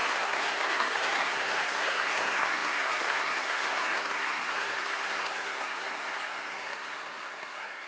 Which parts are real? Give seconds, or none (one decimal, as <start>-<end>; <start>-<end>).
none